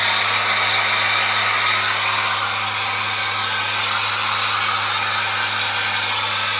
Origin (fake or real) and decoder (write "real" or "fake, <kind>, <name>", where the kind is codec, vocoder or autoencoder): real